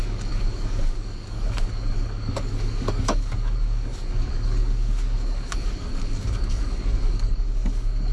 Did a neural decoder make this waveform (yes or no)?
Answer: yes